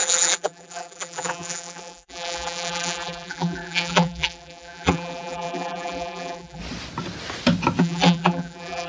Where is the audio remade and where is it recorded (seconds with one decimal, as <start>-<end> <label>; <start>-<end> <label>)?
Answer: 0.0-6.6 remade; 6.6-7.8 recorded; 7.8-8.9 remade